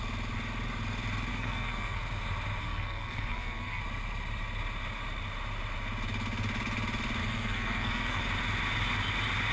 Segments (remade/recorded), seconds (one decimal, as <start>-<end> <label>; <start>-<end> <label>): 0.0-1.3 recorded; 1.3-2.0 remade; 2.0-2.6 recorded; 2.6-3.8 remade; 3.8-7.2 recorded; 7.2-8.2 remade; 8.2-9.5 recorded